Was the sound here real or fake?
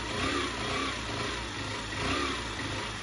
real